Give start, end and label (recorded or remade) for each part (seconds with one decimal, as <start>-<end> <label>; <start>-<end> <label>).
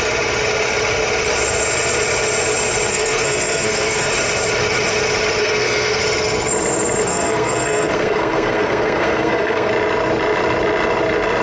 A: 0.0-2.9 recorded; 2.9-4.1 remade; 4.1-5.4 recorded; 5.4-6.0 remade; 6.0-7.1 recorded; 7.1-9.7 remade; 9.7-11.4 recorded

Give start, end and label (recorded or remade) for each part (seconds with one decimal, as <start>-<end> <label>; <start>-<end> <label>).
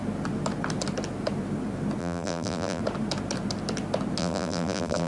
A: 0.0-2.0 recorded; 2.0-2.8 remade; 2.8-4.2 recorded; 4.2-5.1 remade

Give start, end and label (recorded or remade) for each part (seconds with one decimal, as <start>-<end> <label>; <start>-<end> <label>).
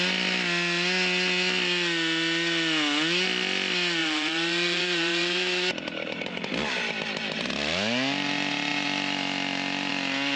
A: 0.0-4.0 recorded; 4.0-6.5 remade; 6.5-10.4 recorded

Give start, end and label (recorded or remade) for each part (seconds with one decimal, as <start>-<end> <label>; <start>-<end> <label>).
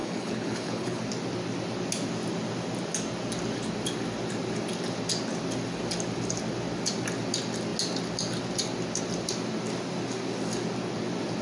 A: 0.0-1.0 remade; 1.0-11.4 recorded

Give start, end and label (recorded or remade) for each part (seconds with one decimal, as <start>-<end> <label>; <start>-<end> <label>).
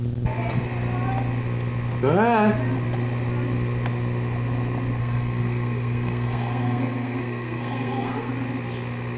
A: 0.0-5.0 recorded; 5.0-8.3 remade; 8.3-9.2 recorded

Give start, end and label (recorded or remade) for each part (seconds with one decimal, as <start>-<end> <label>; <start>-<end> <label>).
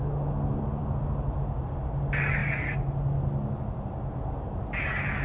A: 0.0-5.2 recorded